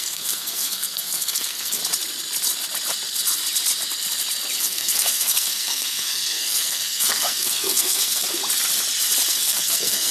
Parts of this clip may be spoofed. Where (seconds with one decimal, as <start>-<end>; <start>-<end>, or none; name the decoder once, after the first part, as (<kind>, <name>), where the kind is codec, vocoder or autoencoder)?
0.0-1.8 (codec, SNAC); 4.6-8.4; 9.3-10.1